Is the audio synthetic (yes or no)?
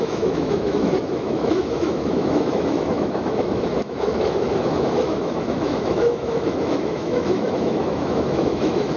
yes